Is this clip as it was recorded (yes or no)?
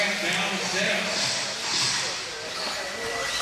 yes